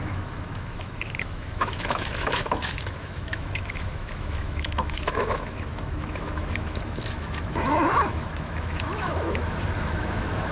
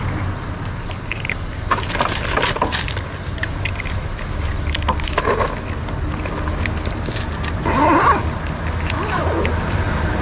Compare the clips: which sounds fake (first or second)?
first